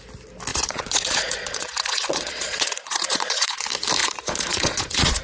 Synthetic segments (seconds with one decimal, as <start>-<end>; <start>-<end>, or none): 0.5-3.6; 4.0-5.2